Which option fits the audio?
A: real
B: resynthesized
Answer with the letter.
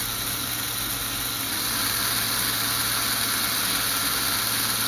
A